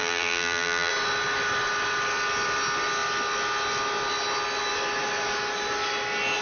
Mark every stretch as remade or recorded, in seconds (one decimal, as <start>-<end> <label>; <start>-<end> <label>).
0.0-0.9 remade; 0.9-6.4 recorded